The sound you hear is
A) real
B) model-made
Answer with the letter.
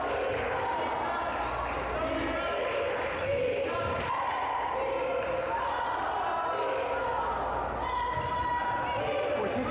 A